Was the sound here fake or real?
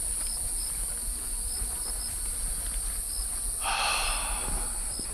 real